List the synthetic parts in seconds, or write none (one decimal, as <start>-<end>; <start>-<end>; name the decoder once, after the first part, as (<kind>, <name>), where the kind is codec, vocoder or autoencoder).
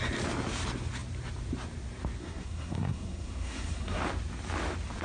2.2-4.0 (codec, SNAC)